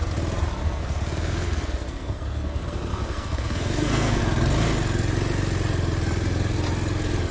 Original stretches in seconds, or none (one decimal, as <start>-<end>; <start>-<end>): 0.0-0.6; 4.2-7.3